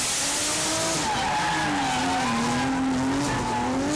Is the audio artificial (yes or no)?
no